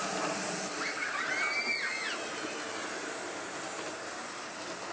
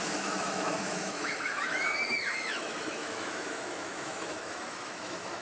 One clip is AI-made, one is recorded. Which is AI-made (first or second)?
second